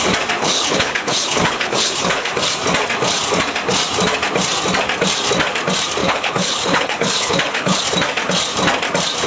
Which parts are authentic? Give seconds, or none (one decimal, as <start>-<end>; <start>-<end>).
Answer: 0.0-0.4; 2.3-6.0; 7.8-9.3